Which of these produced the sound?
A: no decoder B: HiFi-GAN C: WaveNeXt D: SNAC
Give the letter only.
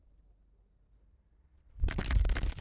A